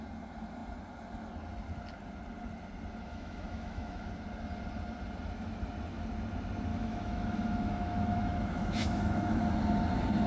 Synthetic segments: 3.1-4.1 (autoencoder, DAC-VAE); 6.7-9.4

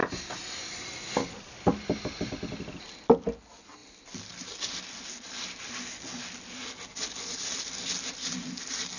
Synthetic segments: none